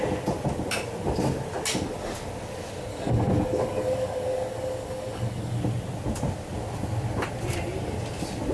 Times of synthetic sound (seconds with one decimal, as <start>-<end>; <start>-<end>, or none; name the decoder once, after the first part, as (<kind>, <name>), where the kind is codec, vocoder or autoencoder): 2.9-5.6 (codec, DAC)

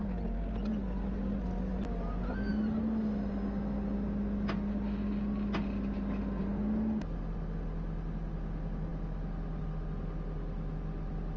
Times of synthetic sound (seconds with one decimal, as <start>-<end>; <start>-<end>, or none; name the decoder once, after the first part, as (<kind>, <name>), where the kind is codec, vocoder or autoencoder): none

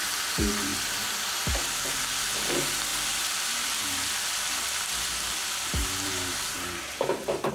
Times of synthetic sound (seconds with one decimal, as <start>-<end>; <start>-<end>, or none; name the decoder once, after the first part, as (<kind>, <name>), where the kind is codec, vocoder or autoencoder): 2.9-7.5 (vocoder, BigVGAN v2)

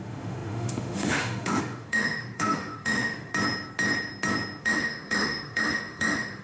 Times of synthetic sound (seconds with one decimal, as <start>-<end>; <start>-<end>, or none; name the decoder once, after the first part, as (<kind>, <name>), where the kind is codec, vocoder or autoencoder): 0.0-3.3 (autoencoder, DAC-VAE); 4.6-6.4

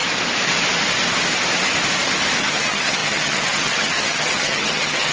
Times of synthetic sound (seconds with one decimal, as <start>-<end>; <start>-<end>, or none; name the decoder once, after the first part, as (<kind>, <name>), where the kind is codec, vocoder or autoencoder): 2.4-5.1 (vocoder, HiFi-GAN)

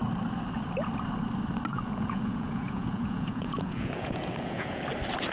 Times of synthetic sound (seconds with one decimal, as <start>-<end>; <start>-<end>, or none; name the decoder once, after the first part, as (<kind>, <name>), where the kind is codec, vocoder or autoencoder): 1.7-4.8 (vocoder, Vocos)

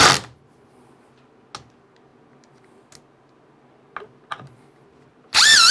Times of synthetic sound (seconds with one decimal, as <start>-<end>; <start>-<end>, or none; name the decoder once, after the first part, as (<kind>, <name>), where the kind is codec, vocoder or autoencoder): none